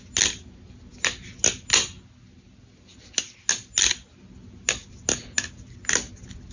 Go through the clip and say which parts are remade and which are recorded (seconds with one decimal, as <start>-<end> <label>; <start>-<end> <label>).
0.0-6.5 recorded